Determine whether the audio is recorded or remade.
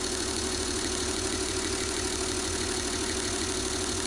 remade